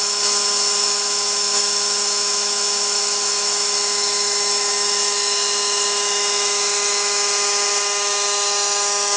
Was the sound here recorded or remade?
remade